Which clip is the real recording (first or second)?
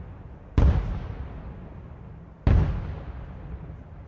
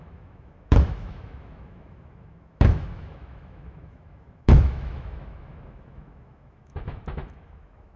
first